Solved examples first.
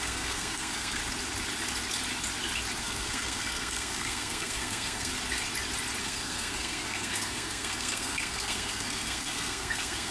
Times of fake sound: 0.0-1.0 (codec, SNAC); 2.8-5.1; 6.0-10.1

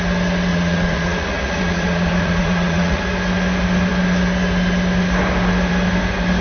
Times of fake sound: 0.5-3.0 (vocoder, Vocos)

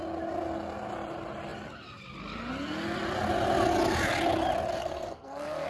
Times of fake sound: 4.8-5.7 (codec, SNAC)